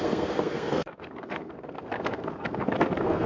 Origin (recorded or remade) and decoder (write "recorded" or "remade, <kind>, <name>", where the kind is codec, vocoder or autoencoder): remade, codec, SNAC